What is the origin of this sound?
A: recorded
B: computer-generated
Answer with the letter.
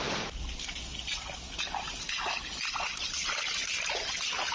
A